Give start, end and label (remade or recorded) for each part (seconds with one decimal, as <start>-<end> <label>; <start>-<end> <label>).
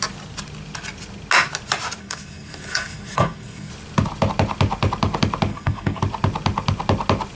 0.0-2.0 recorded; 2.0-3.7 remade; 3.7-5.5 recorded; 5.5-6.0 remade; 6.0-7.3 recorded